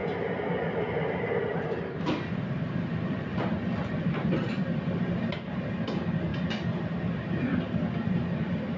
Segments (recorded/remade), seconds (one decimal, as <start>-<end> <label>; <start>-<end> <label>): 0.0-5.0 remade; 5.0-8.8 recorded